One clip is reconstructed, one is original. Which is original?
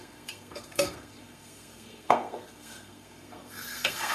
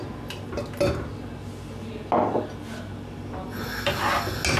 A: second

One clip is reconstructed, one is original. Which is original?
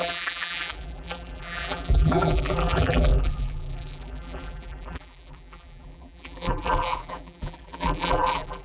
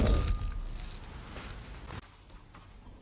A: second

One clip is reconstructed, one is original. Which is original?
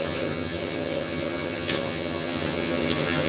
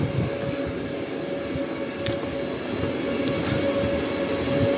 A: second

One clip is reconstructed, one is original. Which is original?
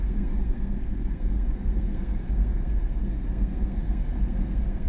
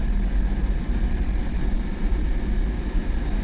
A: second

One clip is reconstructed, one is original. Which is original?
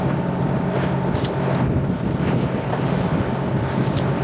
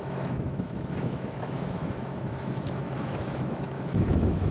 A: first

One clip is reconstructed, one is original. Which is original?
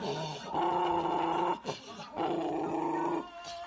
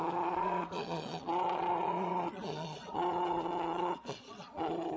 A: first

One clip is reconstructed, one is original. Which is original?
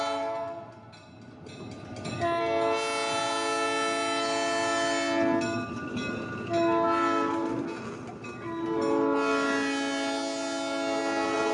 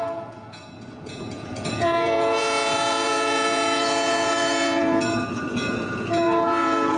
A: first